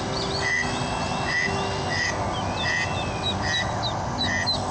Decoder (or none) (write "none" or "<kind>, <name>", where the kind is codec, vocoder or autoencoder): none